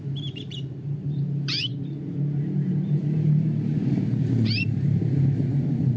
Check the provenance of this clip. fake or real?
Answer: fake